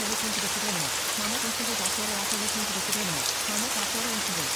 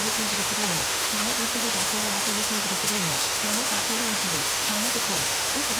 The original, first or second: first